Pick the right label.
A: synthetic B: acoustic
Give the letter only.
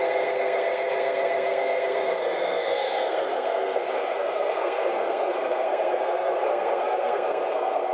A